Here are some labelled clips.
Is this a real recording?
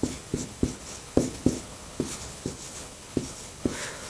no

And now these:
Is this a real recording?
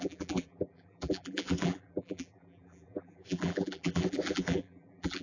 no